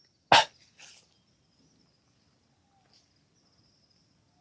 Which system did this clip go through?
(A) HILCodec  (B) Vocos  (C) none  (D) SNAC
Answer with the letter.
C